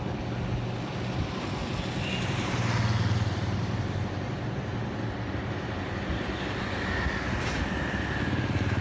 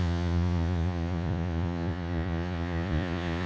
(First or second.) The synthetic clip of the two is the second